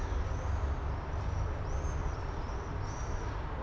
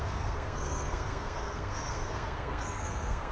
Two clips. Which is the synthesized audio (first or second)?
second